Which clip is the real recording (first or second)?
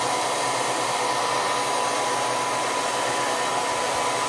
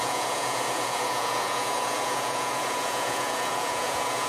first